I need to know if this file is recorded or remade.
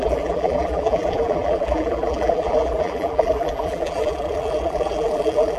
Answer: remade